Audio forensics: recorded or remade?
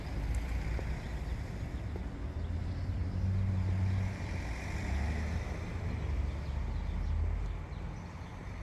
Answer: recorded